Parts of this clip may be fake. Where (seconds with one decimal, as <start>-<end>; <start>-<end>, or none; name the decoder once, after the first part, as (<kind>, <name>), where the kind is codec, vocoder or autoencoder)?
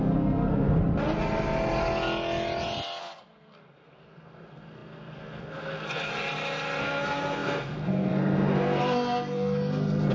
0.0-0.8 (codec, SNAC); 3.0-6.1; 6.8-10.1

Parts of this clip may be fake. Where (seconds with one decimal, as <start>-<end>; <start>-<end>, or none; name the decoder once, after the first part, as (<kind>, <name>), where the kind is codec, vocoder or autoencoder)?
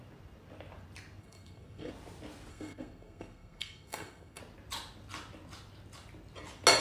1.2-1.9 (codec, SNAC); 2.5-4.4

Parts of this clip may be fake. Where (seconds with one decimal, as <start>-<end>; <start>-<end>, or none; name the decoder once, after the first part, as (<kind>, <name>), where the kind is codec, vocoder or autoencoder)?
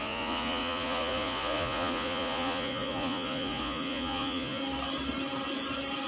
0.0-4.6 (vocoder, Vocos)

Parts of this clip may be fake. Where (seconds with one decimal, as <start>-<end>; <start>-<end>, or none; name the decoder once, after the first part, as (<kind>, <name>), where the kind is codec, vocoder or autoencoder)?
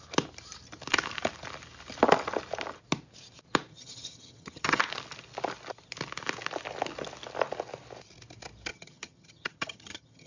3.7-4.8 (vocoder, HiFi-GAN); 8.7-10.3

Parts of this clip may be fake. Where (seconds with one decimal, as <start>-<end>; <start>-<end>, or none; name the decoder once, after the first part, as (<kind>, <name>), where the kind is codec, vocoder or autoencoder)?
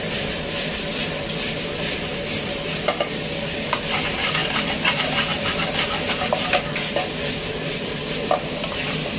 none